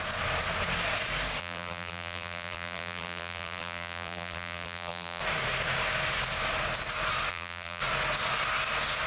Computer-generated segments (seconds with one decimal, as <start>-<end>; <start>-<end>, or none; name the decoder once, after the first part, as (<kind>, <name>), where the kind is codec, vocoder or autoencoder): 1.4-5.2 (vocoder, BigVGAN v2); 7.3-7.8

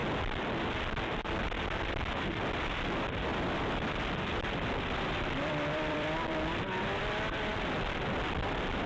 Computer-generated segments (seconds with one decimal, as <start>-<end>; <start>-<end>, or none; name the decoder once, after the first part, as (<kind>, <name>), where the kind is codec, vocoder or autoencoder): 3.3-7.0 (vocoder, BigVGAN v2)

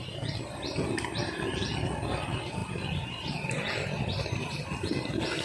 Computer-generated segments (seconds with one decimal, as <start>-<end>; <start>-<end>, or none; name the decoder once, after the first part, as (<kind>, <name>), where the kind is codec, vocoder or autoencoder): none